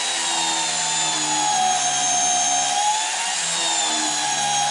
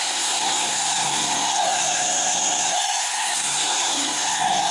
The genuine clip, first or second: first